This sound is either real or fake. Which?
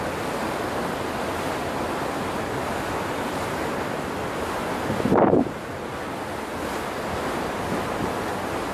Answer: real